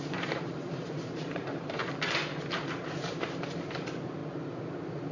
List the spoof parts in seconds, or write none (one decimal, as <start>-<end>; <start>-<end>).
0.0-1.8; 2.5-4.2